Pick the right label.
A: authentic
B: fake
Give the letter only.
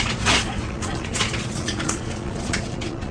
B